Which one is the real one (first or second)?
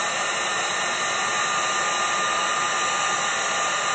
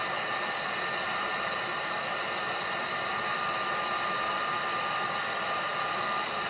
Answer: first